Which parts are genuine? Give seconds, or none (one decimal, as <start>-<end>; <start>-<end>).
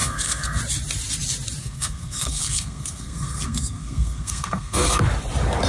0.6-1.6; 5.0-5.7